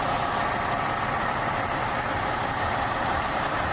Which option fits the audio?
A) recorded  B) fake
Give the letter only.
A